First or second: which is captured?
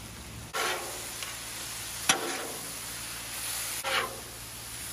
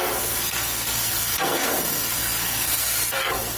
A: first